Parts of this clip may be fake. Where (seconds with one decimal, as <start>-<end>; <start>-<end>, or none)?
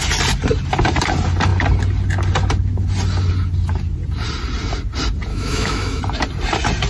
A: 5.3-6.0